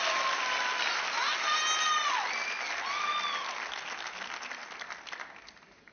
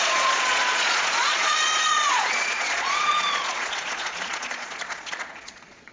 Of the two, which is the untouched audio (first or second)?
first